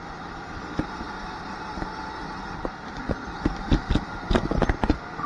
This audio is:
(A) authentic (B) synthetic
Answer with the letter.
A